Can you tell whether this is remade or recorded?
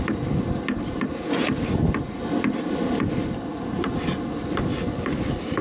recorded